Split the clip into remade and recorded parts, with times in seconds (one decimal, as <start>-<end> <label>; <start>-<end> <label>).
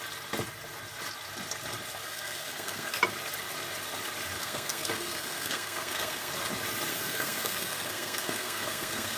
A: 0.0-2.0 recorded; 2.0-3.0 remade; 3.0-4.4 recorded; 4.4-6.3 remade; 6.3-6.9 recorded; 6.9-9.2 remade